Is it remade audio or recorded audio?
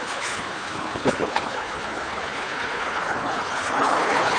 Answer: remade